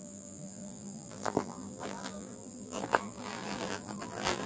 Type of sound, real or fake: fake